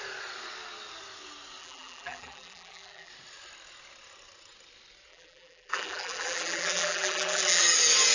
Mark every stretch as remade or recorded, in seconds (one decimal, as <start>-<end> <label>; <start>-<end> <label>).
0.0-1.6 recorded; 1.6-3.1 remade; 3.1-5.1 recorded; 5.1-7.6 remade; 7.6-8.1 recorded